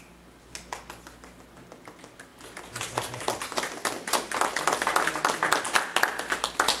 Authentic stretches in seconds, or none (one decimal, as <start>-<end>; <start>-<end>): 0.0-6.8